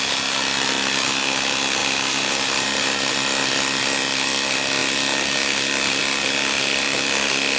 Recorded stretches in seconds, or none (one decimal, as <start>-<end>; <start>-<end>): 0.0-1.8; 3.1-7.6